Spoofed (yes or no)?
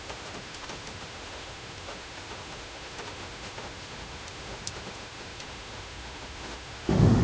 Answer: yes